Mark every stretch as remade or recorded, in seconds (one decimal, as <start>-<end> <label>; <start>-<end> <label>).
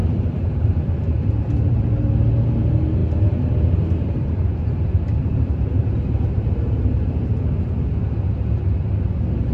0.0-1.8 remade; 1.8-3.0 recorded; 3.0-4.8 remade; 4.8-5.3 recorded; 5.3-7.2 remade; 7.2-9.5 recorded